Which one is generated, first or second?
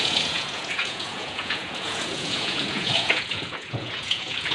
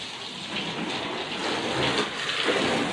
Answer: first